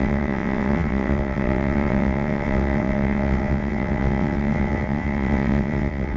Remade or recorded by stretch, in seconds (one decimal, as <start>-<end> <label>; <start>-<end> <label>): 0.0-6.2 remade